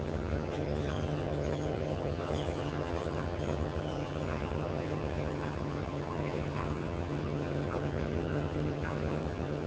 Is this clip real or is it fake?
fake